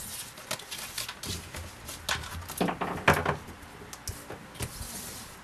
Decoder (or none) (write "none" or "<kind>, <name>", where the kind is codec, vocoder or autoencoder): none